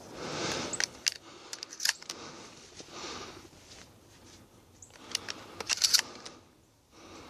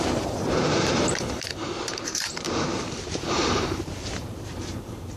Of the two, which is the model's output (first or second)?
second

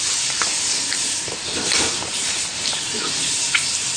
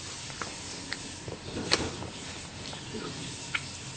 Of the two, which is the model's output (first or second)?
first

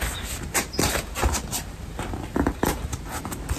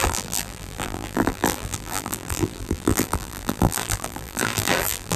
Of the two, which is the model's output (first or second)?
second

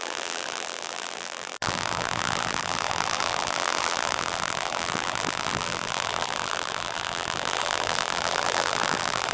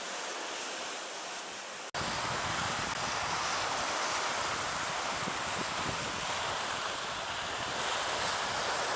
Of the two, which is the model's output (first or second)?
first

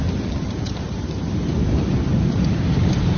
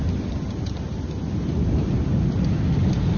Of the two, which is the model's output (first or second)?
first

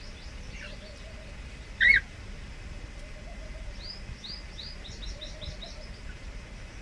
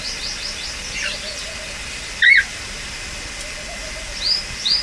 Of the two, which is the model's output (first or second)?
first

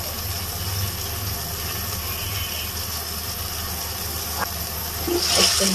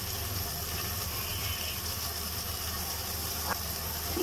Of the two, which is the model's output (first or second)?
second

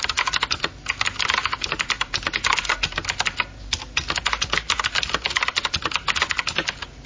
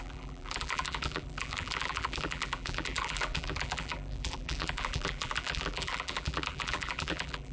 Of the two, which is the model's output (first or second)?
second